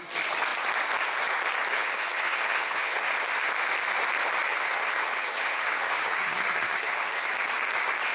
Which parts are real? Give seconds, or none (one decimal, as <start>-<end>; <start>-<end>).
0.0-1.7; 3.1-4.5; 7.3-8.1